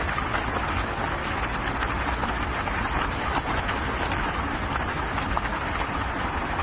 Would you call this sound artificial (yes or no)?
no